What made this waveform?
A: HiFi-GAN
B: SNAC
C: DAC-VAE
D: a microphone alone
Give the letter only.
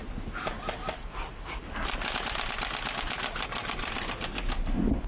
D